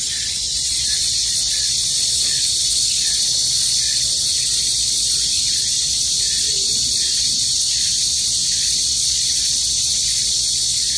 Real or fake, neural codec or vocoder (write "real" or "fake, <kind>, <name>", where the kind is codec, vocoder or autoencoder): fake, vocoder, Vocos